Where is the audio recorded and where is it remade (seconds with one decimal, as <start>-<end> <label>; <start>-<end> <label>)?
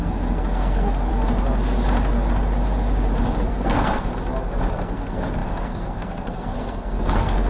0.0-1.1 remade; 1.1-3.4 recorded; 3.4-4.1 remade; 4.1-4.7 recorded; 4.7-7.5 remade